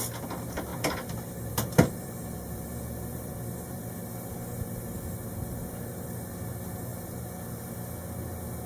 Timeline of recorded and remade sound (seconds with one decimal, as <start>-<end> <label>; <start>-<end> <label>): 0.0-0.7 recorded; 0.7-3.9 remade; 3.9-6.9 recorded; 6.9-7.6 remade; 7.6-8.7 recorded